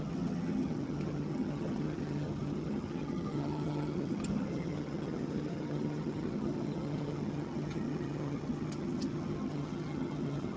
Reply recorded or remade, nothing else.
remade